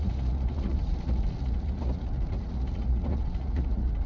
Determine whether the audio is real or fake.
fake